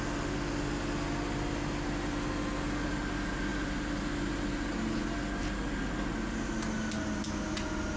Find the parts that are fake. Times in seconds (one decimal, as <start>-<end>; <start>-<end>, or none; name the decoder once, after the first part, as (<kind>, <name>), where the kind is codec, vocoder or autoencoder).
none

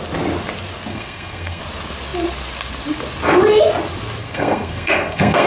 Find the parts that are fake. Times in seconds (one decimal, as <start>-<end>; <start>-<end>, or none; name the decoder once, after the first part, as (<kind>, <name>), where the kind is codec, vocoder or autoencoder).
0.9-1.6 (codec, SNAC); 4.2-5.5

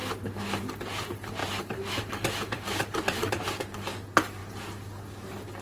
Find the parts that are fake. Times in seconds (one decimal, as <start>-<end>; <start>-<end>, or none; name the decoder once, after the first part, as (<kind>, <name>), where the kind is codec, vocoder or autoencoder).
1.4-3.3 (vocoder, BigVGAN v2)

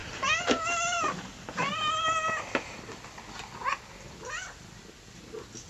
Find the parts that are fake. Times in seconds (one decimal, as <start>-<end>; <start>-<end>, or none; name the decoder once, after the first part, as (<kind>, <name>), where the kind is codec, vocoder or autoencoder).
none

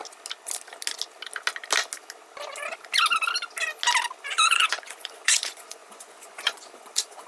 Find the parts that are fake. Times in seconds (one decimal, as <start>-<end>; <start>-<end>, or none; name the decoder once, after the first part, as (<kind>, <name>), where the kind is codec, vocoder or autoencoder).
4.3-7.3 (vocoder, Vocos)

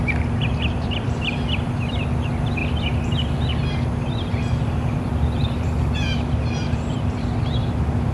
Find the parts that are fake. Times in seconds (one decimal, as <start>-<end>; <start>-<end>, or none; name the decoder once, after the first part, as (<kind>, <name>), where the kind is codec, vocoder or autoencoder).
0.0-8.1 (vocoder, BigVGAN v2)

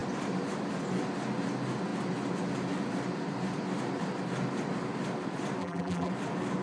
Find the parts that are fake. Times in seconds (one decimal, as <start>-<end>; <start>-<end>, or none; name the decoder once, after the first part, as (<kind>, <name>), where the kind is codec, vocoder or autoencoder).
5.6-6.1 (vocoder, BigVGAN v2)